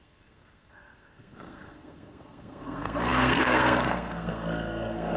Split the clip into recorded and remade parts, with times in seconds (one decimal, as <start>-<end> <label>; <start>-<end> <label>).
0.0-5.2 remade